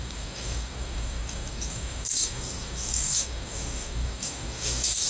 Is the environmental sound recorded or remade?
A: remade